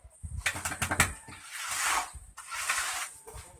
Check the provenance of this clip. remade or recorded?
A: recorded